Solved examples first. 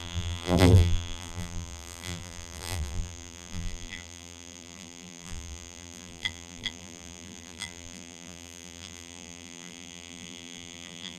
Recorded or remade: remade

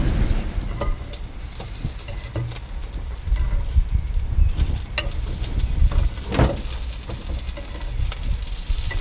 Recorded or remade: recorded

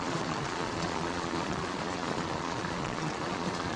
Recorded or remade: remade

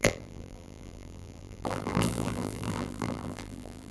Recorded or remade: remade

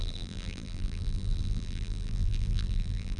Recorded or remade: remade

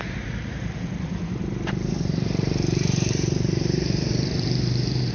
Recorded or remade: remade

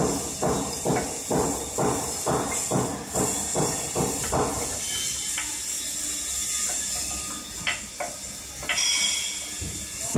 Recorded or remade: recorded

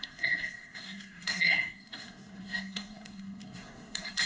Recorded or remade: remade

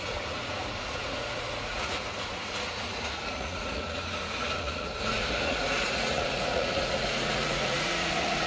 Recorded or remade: remade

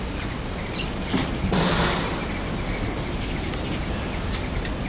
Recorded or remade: recorded